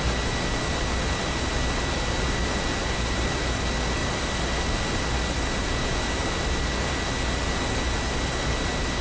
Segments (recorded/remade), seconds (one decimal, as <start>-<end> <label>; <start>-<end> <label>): 0.0-9.0 recorded